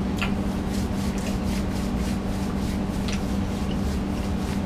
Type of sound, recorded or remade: recorded